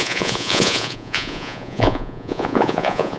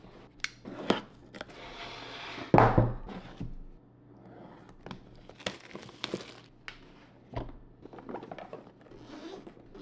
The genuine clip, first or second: second